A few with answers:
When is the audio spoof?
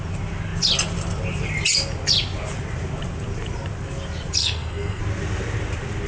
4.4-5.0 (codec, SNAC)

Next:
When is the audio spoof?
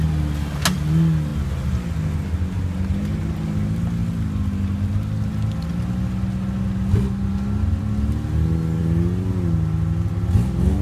none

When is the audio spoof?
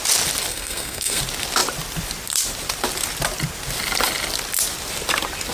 0.5-1.2 (codec, SNAC)